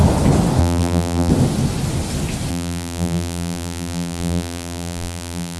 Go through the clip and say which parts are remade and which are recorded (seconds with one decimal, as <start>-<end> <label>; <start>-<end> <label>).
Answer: 0.0-0.6 recorded; 0.6-1.3 remade; 1.3-2.5 recorded; 2.5-5.6 remade